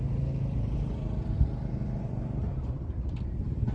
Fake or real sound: real